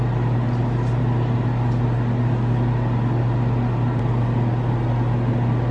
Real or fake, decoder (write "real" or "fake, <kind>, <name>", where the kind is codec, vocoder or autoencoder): real